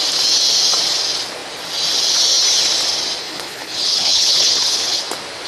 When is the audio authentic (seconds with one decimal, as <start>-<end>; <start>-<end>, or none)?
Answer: 0.0-3.2; 5.0-5.5